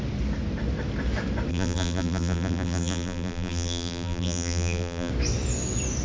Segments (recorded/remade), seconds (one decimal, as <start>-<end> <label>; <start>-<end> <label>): 0.0-1.5 recorded; 1.5-5.1 remade; 5.1-6.0 recorded